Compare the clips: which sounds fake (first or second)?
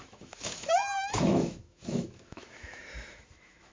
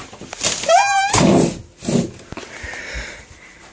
first